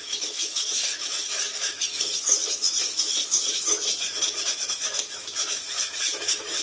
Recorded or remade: remade